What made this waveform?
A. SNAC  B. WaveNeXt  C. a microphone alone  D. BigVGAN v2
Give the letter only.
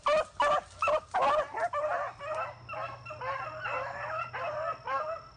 C